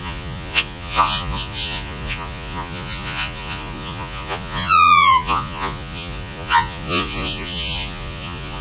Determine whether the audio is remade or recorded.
remade